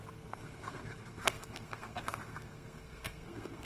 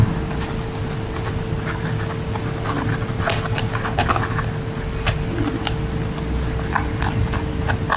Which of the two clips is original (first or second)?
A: second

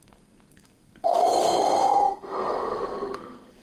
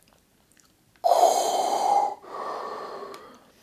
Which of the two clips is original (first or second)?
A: second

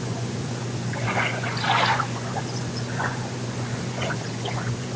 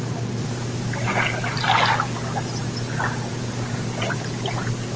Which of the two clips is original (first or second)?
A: second